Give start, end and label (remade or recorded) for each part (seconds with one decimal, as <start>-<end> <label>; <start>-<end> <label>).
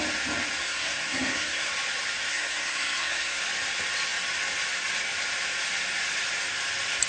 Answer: 0.0-0.6 recorded; 0.6-1.7 remade; 1.7-2.3 recorded; 2.3-3.4 remade; 3.4-7.1 recorded